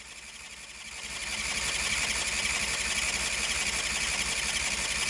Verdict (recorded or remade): recorded